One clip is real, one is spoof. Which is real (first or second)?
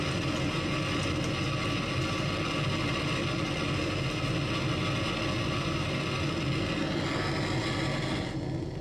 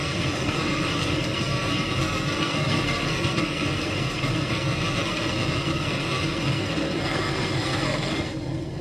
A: first